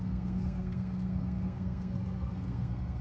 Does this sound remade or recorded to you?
remade